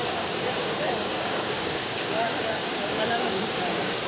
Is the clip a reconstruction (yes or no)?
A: yes